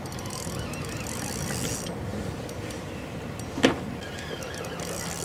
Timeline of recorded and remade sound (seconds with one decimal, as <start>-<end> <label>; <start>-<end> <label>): 0.0-5.2 recorded